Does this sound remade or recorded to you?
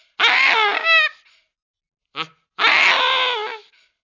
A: recorded